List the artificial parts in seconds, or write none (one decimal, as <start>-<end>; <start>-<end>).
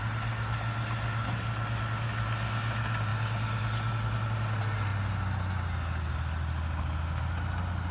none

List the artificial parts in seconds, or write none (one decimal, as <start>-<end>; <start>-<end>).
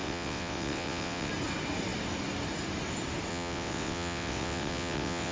0.0-1.3; 3.3-5.3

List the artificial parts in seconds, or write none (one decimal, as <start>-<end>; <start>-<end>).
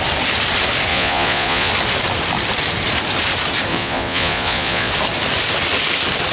0.9-1.7; 3.7-4.9